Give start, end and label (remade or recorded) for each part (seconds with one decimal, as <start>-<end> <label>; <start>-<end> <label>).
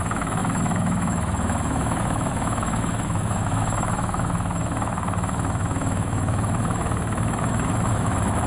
0.0-8.5 remade